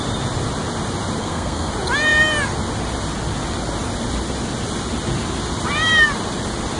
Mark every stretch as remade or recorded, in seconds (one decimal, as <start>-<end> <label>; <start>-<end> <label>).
0.0-1.2 recorded; 1.2-1.7 remade; 1.7-6.8 recorded